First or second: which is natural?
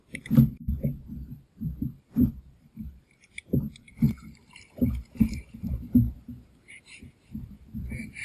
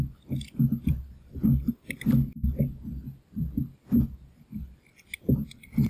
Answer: second